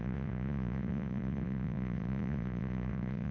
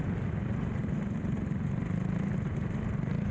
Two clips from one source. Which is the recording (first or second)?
second